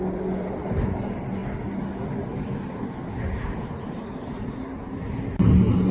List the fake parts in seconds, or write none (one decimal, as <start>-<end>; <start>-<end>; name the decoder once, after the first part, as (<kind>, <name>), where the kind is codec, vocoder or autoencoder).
none